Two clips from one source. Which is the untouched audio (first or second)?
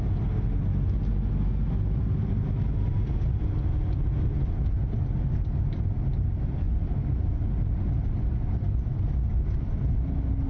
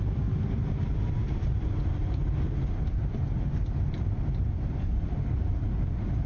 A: first